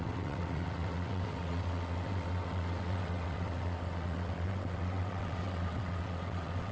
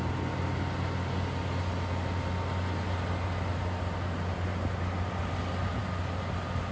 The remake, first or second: first